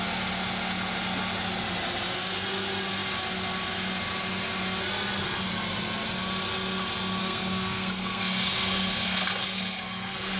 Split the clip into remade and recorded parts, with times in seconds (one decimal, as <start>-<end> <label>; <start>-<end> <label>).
0.0-7.2 recorded; 7.2-10.4 remade